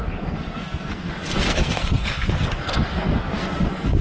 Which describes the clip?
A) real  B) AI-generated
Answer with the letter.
B